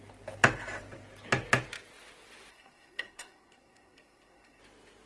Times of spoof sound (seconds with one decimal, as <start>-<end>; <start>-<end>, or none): 2.5-4.6